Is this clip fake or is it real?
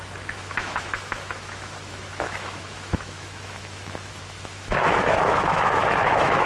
fake